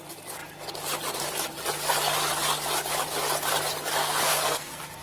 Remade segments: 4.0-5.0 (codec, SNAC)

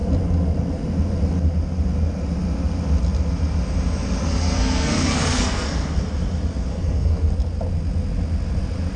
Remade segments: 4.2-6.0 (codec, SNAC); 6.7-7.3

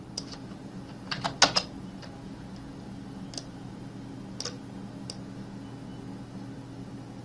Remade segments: none